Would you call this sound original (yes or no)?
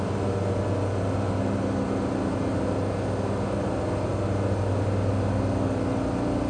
yes